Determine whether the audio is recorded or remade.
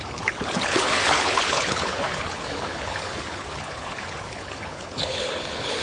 remade